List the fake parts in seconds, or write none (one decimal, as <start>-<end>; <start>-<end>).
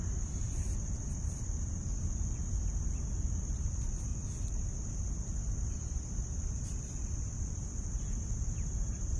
0.0-4.1; 4.7-9.2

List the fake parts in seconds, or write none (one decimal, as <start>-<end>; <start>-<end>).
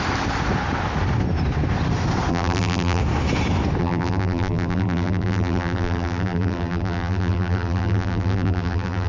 2.3-3.0; 3.8-9.1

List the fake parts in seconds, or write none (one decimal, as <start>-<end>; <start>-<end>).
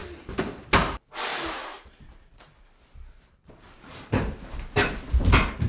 0.0-0.5; 1.3-4.7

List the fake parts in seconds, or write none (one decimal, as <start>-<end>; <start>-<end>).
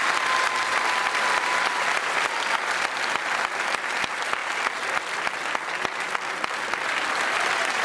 none